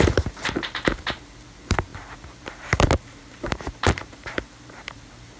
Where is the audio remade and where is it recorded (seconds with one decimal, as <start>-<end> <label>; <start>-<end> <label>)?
0.0-5.4 remade